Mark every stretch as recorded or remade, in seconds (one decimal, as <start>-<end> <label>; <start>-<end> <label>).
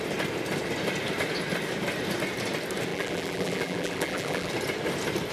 0.0-2.9 recorded; 2.9-4.5 remade; 4.5-5.3 recorded